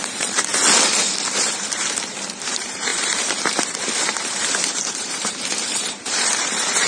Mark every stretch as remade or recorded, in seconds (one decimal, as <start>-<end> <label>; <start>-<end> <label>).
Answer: 0.0-0.5 remade; 0.5-1.4 recorded; 1.4-6.9 remade

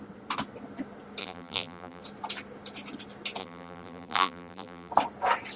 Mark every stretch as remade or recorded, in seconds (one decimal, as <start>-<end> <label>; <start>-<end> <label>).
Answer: 0.0-1.2 recorded; 1.2-2.0 remade; 2.0-3.4 recorded; 3.4-4.9 remade; 4.9-5.6 recorded

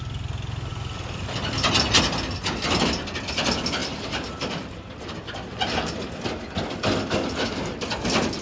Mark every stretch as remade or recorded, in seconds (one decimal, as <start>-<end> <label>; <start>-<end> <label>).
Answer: 0.0-3.8 recorded; 3.8-4.6 remade; 4.6-8.4 recorded

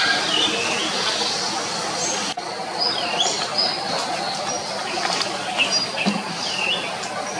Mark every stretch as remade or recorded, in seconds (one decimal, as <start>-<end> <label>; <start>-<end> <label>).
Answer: 0.0-7.4 recorded

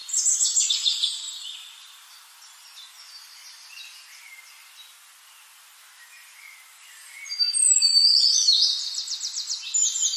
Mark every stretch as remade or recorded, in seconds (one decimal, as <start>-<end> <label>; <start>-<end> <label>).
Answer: 0.0-10.2 recorded